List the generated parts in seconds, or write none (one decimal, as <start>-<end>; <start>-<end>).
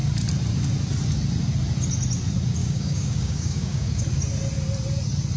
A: 2.6-4.0